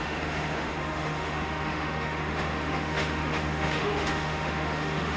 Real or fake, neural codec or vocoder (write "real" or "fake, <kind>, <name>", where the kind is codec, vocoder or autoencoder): fake, autoencoder, DAC-VAE